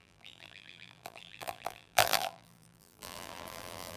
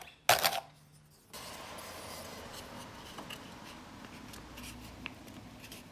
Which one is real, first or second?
second